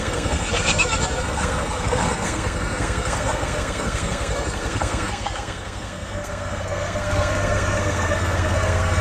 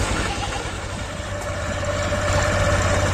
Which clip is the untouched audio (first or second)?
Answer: second